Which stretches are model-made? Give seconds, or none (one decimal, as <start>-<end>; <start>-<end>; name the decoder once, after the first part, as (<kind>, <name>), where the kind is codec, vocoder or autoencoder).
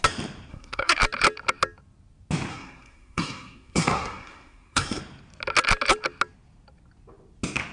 0.5-1.0 (codec, SNAC); 2.5-5.0